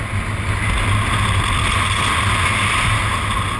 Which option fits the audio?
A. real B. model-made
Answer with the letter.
A